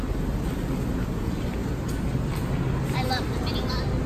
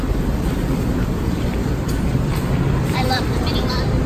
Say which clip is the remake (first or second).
second